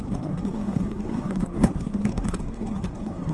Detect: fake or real fake